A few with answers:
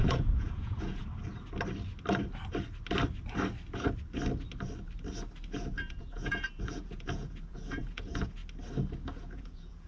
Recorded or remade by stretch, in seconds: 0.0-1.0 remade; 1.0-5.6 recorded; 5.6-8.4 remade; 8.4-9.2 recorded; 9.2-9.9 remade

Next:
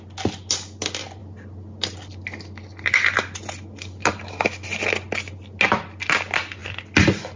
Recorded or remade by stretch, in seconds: 0.0-7.4 recorded

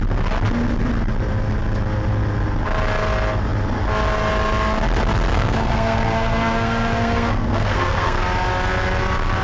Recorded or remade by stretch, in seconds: 0.0-5.3 recorded; 5.3-8.2 remade; 8.2-9.4 recorded

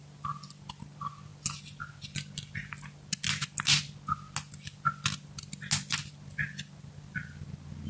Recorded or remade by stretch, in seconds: 0.0-7.9 recorded

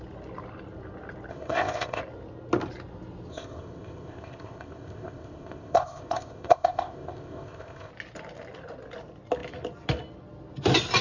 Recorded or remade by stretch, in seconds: 0.0-1.3 recorded; 1.3-2.0 remade; 2.0-3.3 recorded; 3.3-7.9 remade; 7.9-11.0 recorded

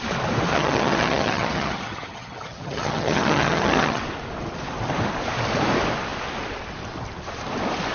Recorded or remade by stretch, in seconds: 0.0-0.5 recorded; 0.5-4.0 remade; 4.0-7.9 recorded

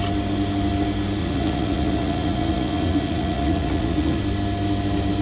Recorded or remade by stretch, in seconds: 0.0-1.2 recorded; 1.2-4.2 remade; 4.2-5.2 recorded